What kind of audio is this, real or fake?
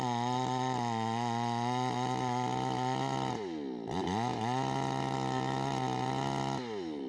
real